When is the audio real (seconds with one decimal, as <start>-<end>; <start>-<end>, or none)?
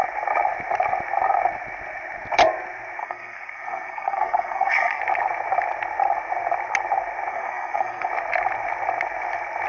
0.0-3.0; 5.0-7.3; 8.1-9.7